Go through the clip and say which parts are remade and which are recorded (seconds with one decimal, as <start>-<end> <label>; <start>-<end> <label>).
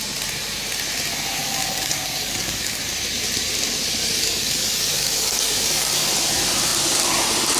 0.0-1.4 recorded; 1.4-2.8 remade; 2.8-4.0 recorded; 4.0-6.1 remade; 6.1-7.6 recorded